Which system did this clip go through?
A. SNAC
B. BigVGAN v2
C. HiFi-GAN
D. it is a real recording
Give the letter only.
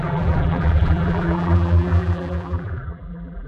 B